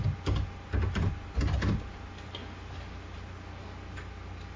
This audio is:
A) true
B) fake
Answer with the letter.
A